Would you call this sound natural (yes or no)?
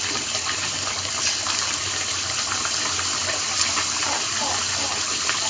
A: no